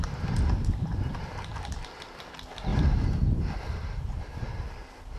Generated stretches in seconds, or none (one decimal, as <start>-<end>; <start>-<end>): none